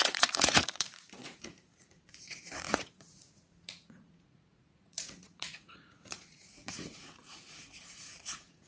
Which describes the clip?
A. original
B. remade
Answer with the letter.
B